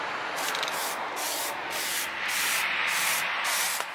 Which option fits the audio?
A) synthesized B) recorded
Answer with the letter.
B